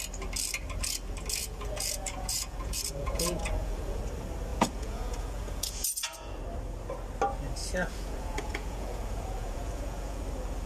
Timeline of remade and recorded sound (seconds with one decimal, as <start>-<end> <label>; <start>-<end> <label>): 0.0-1.4 recorded; 1.4-4.0 remade; 4.0-4.5 recorded; 4.5-6.4 remade; 6.4-7.6 recorded; 7.6-10.2 remade; 10.2-10.7 recorded